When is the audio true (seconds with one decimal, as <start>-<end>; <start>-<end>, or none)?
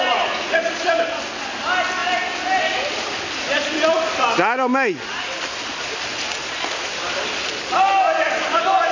0.0-8.9